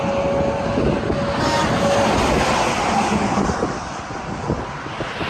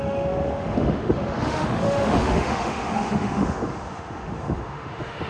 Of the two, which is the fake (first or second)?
second